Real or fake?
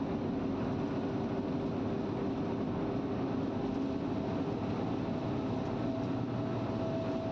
real